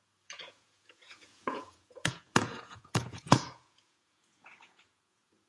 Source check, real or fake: fake